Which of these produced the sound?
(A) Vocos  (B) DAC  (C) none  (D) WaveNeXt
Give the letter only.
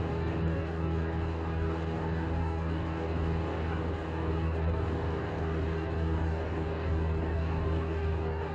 B